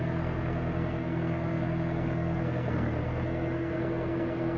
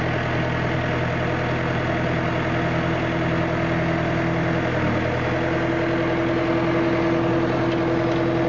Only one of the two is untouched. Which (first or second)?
second